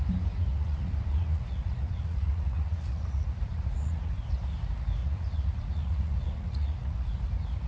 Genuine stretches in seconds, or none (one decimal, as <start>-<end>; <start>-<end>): 0.0-0.5; 4.2-5.0; 7.2-7.7